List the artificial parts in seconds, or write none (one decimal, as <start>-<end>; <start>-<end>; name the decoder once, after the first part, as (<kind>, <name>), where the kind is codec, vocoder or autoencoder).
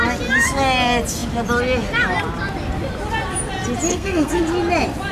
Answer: 3.9-4.4 (codec, SNAC)